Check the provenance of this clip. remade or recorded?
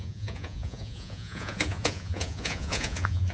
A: remade